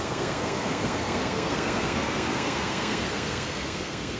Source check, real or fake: fake